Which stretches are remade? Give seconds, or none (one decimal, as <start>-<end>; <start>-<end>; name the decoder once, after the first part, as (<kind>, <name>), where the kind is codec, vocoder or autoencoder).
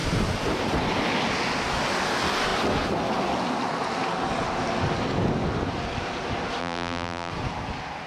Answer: 6.6-7.3 (vocoder, BigVGAN v2)